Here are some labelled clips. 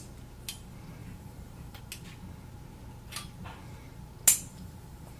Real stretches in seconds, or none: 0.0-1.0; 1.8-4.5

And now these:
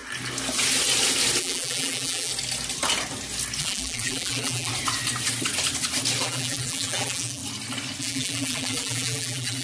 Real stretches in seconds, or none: 0.0-1.4; 2.3-3.6; 4.7-6.2; 7.4-8.0

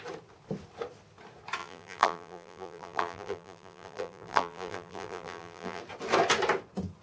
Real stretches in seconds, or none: 0.0-1.6; 5.8-7.0

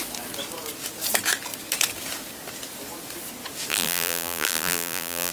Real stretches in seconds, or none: 0.0-3.7